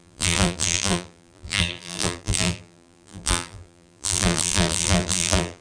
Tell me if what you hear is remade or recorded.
remade